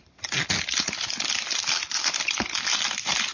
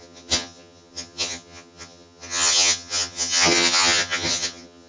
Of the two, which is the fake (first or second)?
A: second